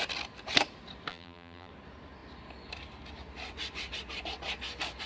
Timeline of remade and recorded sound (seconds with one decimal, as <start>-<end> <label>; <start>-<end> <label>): 0.0-1.1 recorded; 1.1-1.7 remade; 1.7-5.1 recorded